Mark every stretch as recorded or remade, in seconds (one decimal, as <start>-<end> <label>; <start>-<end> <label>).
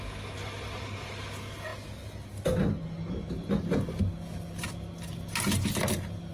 0.0-6.3 recorded